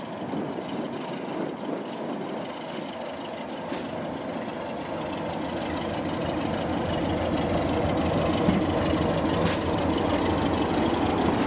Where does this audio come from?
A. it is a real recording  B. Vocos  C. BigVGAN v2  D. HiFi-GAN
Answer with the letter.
A